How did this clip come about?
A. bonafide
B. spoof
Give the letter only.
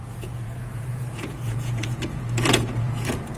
B